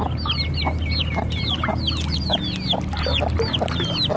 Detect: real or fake real